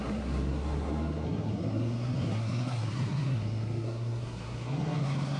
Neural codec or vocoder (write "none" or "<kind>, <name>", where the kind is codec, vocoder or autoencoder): codec, SNAC